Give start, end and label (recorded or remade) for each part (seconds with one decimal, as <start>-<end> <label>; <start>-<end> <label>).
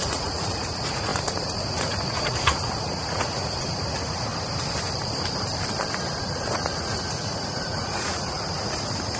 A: 0.0-4.3 remade; 4.3-6.2 recorded; 6.2-9.2 remade